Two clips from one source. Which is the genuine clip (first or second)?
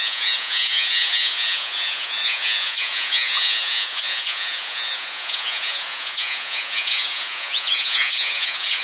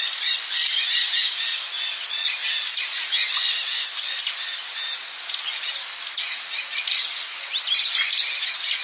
second